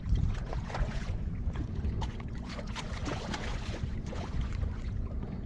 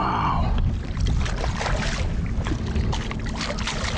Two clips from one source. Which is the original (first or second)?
second